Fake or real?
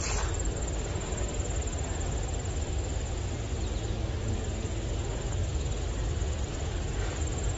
real